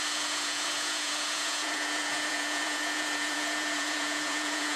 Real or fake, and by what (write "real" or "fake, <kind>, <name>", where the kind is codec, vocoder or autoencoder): fake, vocoder, Vocos